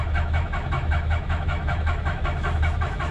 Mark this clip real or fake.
fake